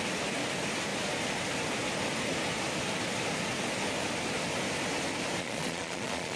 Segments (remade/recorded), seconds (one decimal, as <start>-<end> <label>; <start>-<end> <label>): 0.0-5.4 recorded; 5.4-6.4 remade